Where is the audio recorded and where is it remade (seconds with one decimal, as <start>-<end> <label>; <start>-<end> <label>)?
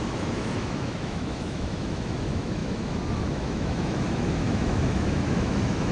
0.0-5.9 remade